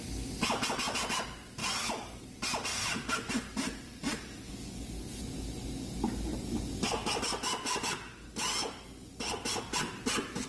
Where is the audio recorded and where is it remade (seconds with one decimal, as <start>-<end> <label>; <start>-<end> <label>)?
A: 0.0-1.6 recorded; 1.6-2.2 remade; 2.2-2.7 recorded; 2.7-4.5 remade; 4.5-10.5 recorded